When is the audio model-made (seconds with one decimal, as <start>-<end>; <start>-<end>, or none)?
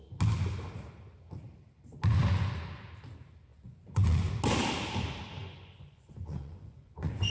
3.5-4.3; 5.4-7.3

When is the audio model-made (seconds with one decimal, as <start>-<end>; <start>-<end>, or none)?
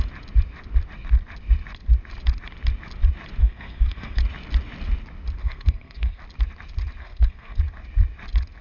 3.4-4.2; 5.4-6.2; 7.0-7.6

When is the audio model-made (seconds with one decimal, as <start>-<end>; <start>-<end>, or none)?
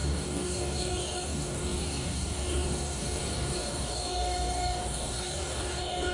0.0-6.1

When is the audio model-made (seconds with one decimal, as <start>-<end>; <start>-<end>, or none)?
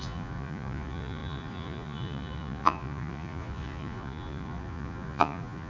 0.0-5.7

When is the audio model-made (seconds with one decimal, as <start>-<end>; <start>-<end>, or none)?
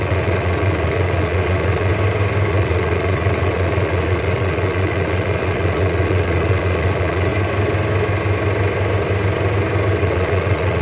0.0-1.9; 2.5-7.3; 10.0-10.8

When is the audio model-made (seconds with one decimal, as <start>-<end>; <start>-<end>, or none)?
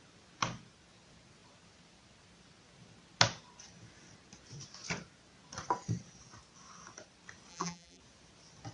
7.5-8.0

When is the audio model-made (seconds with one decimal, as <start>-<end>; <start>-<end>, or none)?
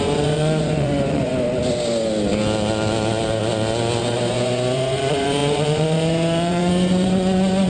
0.0-1.3; 4.0-7.7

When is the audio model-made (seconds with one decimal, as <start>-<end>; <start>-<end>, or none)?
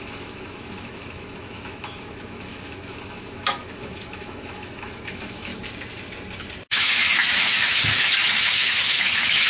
0.0-5.5; 6.7-9.5